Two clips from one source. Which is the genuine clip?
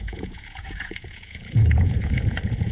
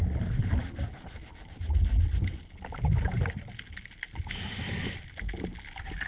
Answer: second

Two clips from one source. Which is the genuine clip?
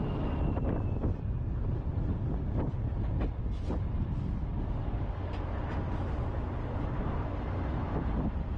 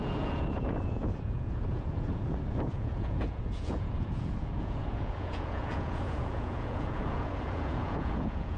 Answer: first